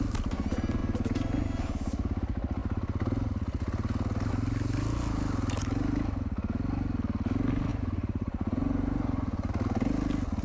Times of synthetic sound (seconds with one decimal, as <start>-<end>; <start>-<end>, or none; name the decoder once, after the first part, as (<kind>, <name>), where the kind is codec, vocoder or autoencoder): 7.7-9.5 (vocoder, Vocos)